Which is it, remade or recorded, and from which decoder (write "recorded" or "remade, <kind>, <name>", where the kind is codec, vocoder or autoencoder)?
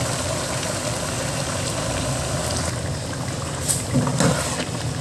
recorded